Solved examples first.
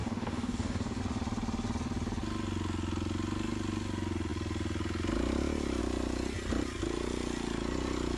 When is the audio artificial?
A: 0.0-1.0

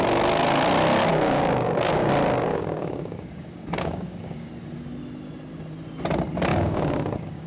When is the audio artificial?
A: 1.1-2.1; 2.5-4.5; 6.5-7.5

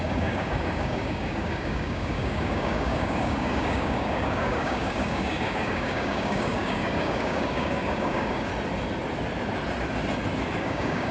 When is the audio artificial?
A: 0.0-8.5; 10.6-11.1

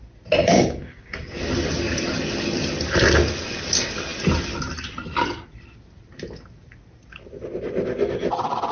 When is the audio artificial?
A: 0.4-1.4

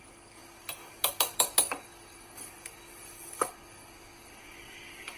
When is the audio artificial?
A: 0.0-5.2

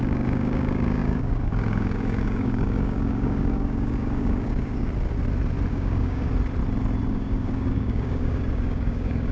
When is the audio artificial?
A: 0.0-4.9; 5.7-6.3; 7.1-9.3